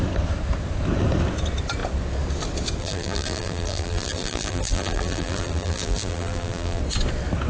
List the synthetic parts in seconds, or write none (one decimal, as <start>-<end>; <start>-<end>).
2.8-6.8